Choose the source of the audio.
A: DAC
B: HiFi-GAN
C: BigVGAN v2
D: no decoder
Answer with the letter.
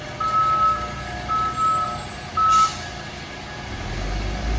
D